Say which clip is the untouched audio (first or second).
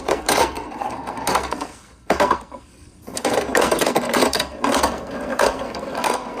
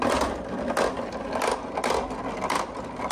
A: second